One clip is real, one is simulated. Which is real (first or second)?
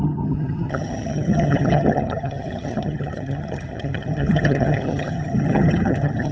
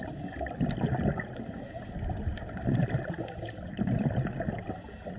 second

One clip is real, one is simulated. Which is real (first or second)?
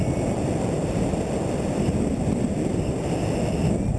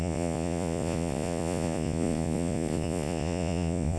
first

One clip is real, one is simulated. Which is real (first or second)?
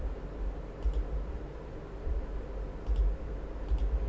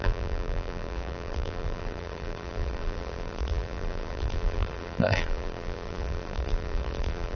first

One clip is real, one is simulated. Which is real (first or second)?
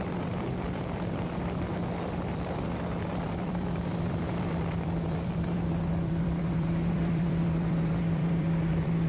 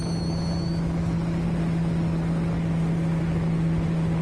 second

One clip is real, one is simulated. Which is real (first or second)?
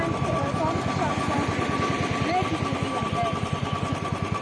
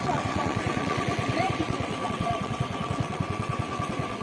first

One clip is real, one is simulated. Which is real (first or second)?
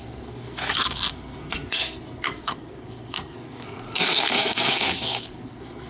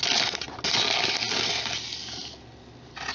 second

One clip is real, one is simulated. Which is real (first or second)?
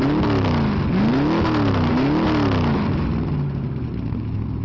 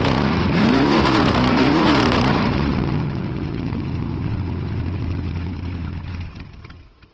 first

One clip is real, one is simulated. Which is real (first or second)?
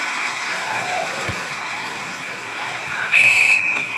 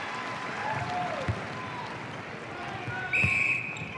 second